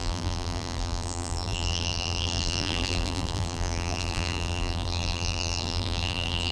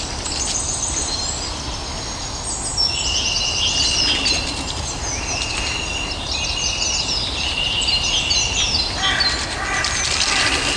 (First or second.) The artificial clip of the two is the first